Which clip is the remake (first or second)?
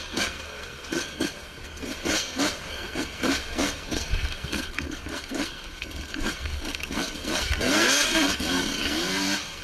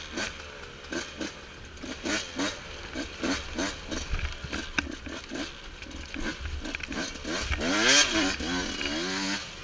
first